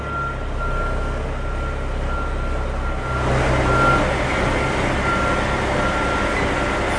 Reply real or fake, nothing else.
real